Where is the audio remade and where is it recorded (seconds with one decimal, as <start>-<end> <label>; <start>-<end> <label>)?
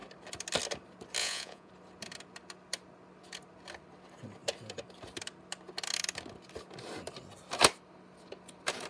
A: 0.0-1.2 recorded; 1.2-1.7 remade; 1.7-8.9 recorded